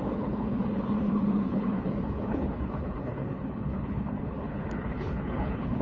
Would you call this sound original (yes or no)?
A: no